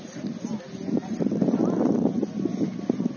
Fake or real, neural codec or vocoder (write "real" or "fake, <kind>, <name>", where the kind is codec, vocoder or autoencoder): real